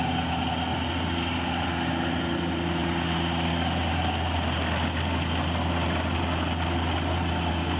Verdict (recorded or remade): recorded